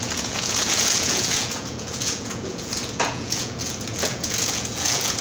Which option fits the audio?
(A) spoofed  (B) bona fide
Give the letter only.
A